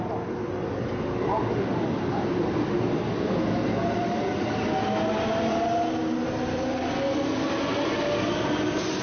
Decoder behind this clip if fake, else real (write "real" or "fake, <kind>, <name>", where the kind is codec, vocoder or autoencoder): real